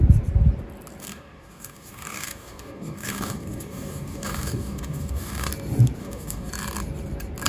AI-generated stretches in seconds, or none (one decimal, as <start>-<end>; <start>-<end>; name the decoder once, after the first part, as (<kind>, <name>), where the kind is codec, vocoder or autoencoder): 1.0-5.5 (codec, DAC); 6.0-6.5